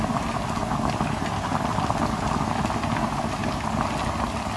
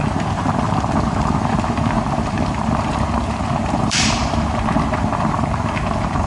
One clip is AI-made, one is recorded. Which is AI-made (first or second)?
second